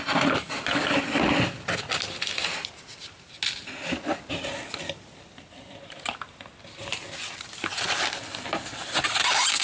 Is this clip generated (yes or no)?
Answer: no